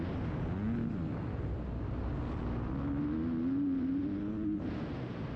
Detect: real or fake real